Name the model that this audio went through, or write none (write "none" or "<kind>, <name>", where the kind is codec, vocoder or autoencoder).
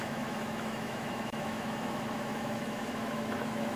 autoencoder, DAC-VAE